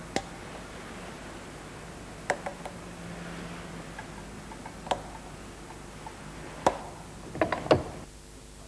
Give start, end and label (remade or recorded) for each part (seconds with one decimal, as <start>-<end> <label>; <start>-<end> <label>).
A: 0.0-8.7 recorded